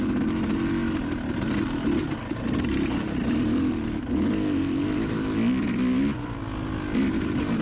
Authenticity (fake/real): real